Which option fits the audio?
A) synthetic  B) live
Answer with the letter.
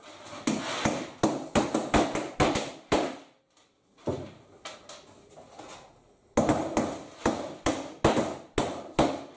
B